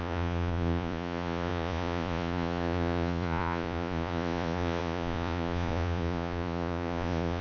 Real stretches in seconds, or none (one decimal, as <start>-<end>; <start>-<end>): none